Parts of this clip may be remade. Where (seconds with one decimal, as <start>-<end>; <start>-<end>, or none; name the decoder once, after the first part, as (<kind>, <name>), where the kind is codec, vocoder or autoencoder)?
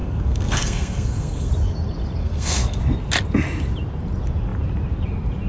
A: 0.0-1.5 (codec, SNAC); 2.2-2.8